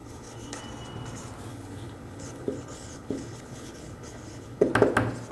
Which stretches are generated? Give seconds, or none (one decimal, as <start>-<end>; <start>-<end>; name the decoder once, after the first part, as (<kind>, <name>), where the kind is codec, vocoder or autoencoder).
0.0-0.6 (codec, HILCodec); 1.5-4.7